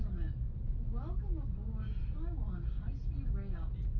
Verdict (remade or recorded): recorded